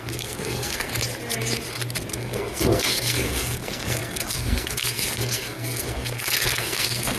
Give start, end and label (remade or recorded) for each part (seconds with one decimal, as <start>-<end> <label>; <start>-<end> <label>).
0.0-0.9 remade; 0.9-2.1 recorded; 2.1-7.2 remade